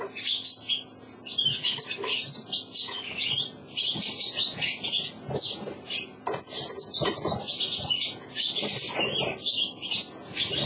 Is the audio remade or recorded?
recorded